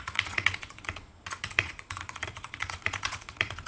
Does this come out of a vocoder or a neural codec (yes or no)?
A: yes